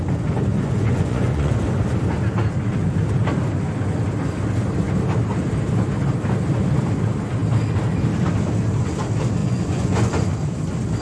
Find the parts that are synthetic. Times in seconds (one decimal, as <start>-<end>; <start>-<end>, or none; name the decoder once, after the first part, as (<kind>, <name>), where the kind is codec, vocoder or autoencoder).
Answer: 0.5-1.5 (vocoder, Vocos); 9.4-10.1